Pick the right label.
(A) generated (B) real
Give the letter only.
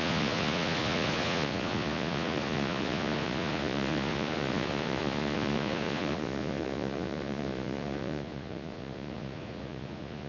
A